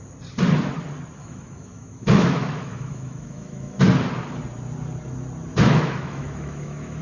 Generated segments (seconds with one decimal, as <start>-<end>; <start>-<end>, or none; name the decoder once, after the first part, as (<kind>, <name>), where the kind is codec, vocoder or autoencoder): 1.2-3.8 (autoencoder, DAC-VAE); 5.5-7.0

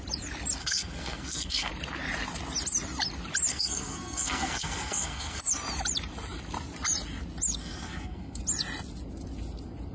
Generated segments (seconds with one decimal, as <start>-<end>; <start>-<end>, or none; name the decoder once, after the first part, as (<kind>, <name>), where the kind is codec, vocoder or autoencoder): 0.6-1.7 (codec, SNAC); 3.5-5.4; 7.6-8.4

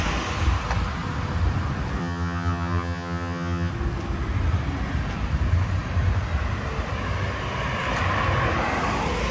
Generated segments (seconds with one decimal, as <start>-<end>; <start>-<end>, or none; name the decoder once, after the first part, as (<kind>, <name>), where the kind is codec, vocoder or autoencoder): 2.0-3.7 (vocoder, HiFi-GAN)

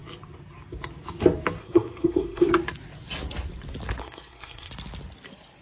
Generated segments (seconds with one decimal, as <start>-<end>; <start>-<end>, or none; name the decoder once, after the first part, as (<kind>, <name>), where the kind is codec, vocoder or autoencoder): 1.6-2.5 (codec, SNAC); 4.0-4.7

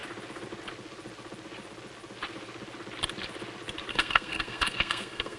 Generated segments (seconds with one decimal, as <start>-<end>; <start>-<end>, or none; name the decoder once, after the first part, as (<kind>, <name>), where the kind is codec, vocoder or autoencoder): 3.9-5.4 (codec, SNAC)

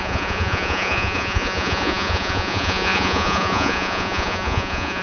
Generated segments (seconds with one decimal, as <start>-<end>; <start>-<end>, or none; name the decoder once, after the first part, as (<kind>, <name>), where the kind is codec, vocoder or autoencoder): 0.0-5.0 (vocoder, Vocos)

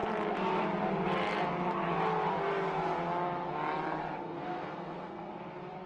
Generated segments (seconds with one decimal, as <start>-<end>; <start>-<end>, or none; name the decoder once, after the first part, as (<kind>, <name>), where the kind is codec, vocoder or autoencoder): 4.2-5.3 (codec, SNAC)